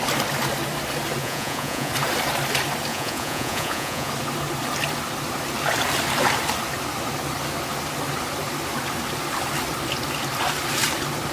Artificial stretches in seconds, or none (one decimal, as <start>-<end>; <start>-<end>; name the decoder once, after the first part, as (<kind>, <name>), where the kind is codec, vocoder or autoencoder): 1.2-1.9 (vocoder, Vocos); 2.9-4.1